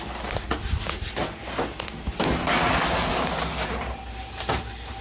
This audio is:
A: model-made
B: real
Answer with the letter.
B